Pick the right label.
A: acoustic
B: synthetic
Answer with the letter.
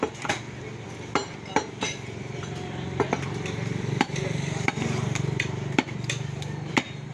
B